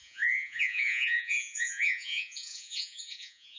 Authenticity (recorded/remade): remade